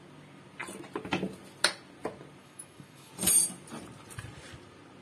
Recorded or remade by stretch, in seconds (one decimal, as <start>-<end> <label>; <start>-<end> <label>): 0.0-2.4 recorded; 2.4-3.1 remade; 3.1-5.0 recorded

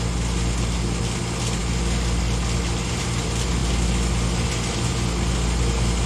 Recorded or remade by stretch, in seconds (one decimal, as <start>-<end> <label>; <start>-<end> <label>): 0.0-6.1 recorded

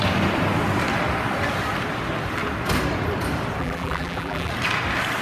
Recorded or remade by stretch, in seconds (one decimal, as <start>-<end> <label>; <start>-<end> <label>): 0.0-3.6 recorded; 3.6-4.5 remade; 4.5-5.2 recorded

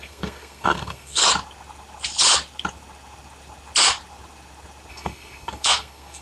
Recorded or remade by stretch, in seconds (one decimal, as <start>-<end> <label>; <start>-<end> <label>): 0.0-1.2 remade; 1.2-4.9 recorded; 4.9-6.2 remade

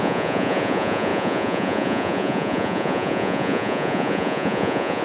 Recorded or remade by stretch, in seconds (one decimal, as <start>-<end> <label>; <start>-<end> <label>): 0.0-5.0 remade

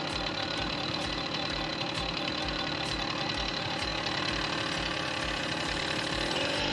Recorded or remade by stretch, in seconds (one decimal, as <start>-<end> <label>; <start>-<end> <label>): 0.0-3.9 remade; 3.9-5.4 recorded; 5.4-6.7 remade

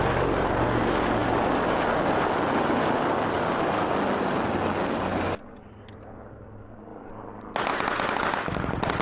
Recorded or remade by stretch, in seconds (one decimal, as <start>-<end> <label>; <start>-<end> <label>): 0.0-9.0 recorded

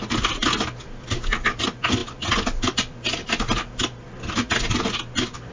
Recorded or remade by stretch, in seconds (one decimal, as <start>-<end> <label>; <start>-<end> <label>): 0.0-5.5 recorded